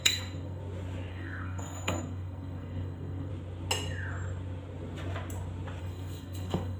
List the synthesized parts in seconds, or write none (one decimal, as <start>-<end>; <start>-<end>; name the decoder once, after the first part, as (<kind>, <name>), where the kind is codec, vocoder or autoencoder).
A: 0.0-0.6 (codec, SNAC); 1.1-3.3; 5.8-6.8